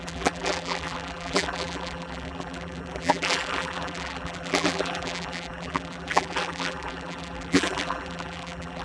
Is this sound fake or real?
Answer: fake